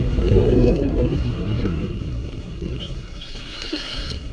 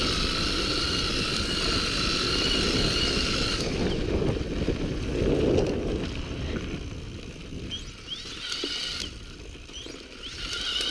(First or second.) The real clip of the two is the second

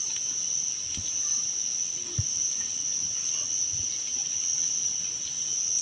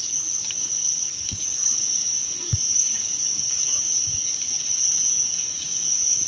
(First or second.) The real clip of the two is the first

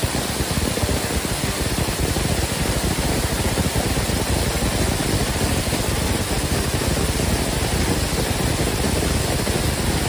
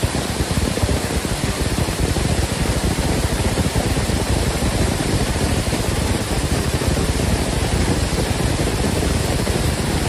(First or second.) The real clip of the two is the first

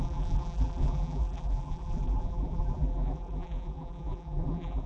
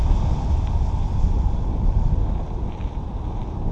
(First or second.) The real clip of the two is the second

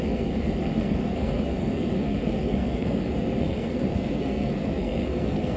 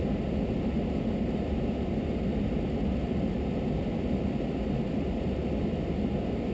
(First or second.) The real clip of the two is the second